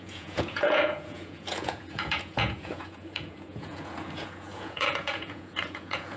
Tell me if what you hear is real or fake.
fake